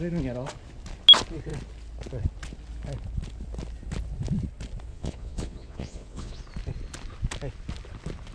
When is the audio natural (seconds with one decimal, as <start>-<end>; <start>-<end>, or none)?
0.0-4.9; 6.4-8.3